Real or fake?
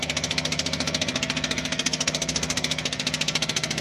fake